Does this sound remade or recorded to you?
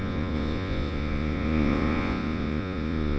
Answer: remade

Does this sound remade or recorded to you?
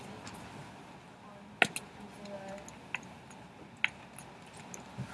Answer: recorded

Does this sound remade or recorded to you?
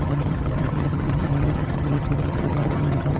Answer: remade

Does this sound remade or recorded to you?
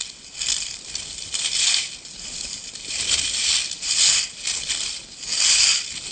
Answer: recorded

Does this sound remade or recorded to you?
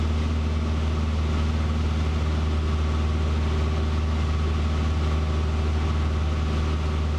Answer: recorded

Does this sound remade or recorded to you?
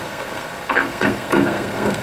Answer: remade